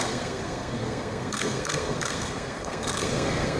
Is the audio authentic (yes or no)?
no